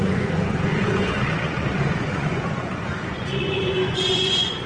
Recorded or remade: remade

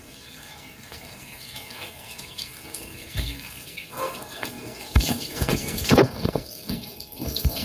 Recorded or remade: remade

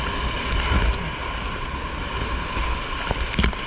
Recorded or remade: recorded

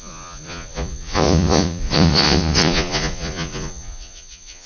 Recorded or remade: remade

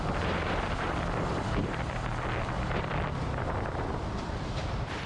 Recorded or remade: remade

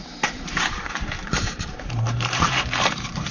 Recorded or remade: remade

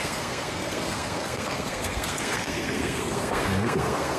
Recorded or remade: remade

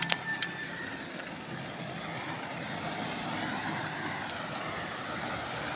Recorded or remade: recorded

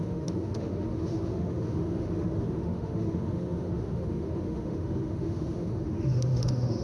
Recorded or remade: remade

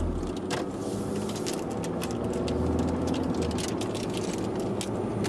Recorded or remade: recorded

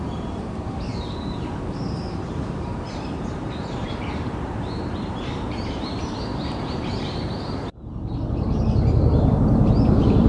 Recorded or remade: remade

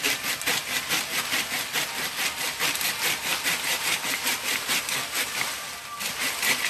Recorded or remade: recorded